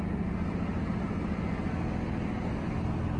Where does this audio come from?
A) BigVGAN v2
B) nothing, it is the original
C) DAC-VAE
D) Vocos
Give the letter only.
B